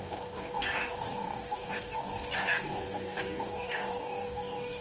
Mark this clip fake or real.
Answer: fake